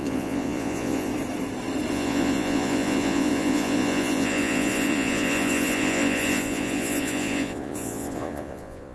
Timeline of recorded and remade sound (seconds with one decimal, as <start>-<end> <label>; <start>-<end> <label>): 0.0-1.1 remade; 1.1-1.9 recorded; 1.9-8.9 remade